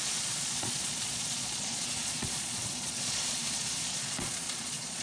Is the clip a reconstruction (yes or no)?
yes